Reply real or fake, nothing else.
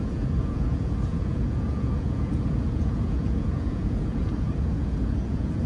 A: fake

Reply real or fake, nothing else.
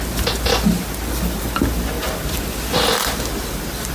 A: real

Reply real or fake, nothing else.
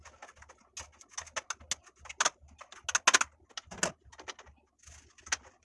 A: real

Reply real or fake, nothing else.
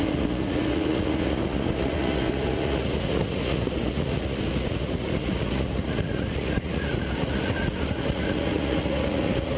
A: fake